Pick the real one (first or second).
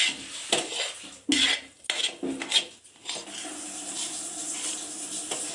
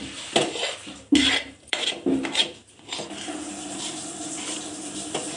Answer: first